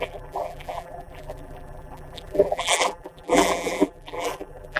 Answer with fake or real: fake